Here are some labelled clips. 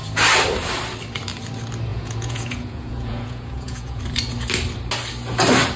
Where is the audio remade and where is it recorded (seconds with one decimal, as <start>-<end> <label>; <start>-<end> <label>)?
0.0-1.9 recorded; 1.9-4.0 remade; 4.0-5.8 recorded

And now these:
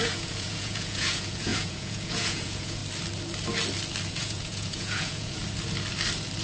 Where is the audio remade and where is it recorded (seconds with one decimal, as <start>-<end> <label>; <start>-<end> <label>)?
0.0-2.8 remade; 2.8-4.1 recorded; 4.1-5.4 remade; 5.4-6.4 recorded

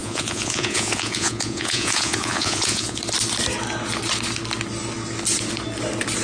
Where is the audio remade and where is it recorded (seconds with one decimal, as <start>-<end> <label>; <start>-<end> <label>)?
0.0-3.0 remade; 3.0-6.2 recorded

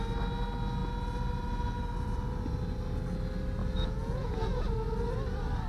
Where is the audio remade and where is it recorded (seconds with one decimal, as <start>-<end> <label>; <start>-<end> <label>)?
0.0-3.6 recorded; 3.6-4.7 remade; 4.7-5.7 recorded

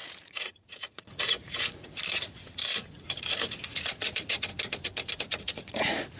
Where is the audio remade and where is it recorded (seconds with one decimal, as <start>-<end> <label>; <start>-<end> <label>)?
0.0-4.5 remade; 4.5-5.4 recorded; 5.4-6.2 remade